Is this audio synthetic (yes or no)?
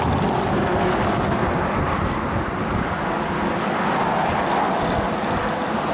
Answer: no